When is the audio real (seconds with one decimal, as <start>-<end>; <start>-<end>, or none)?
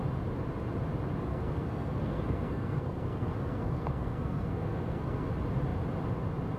0.0-1.3; 5.3-6.6